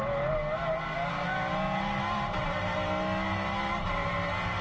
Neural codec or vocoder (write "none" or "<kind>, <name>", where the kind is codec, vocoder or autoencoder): none